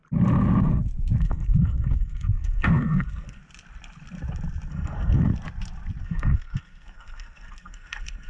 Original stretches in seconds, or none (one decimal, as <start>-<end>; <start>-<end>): 0.0-1.2; 3.4-4.7; 5.3-6.0